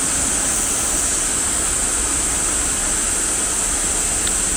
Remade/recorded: recorded